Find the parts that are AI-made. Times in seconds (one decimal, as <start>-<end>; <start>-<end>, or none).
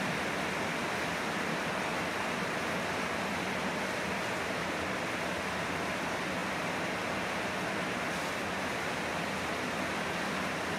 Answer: 6.4-7.0